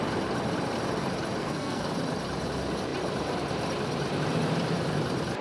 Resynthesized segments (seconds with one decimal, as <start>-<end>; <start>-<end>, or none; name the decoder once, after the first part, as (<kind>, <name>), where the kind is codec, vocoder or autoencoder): 1.4-1.9 (codec, SNAC)